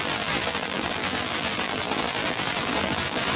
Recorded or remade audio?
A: remade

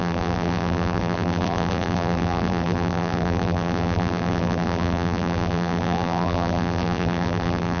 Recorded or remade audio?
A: remade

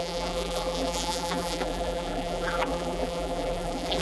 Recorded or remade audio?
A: remade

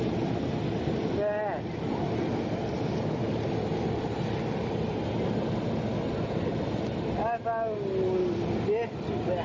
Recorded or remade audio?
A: recorded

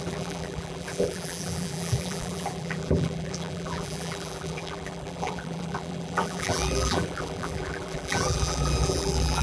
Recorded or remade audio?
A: remade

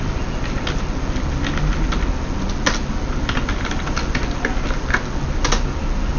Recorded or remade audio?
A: recorded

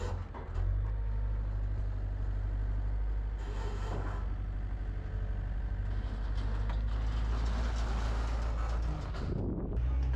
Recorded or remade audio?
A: recorded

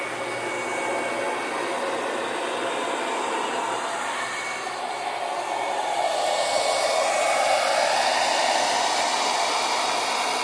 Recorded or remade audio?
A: recorded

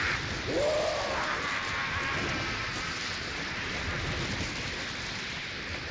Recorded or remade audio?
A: recorded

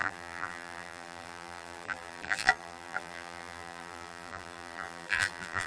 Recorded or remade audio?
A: remade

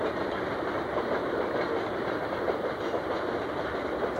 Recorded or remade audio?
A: remade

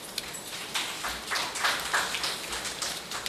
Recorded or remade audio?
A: recorded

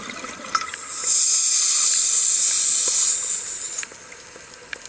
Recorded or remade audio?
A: recorded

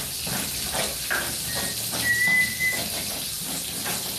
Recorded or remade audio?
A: recorded